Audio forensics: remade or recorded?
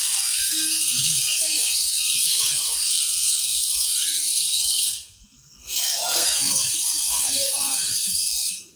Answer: remade